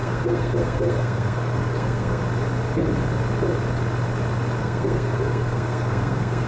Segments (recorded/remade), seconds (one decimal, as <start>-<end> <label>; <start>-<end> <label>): 0.0-2.2 remade; 2.2-4.6 recorded; 4.6-6.5 remade